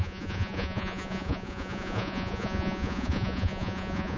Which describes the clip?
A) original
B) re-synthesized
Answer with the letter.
B